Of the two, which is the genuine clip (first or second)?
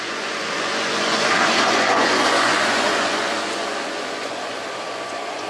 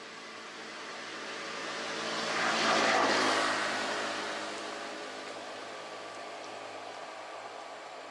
second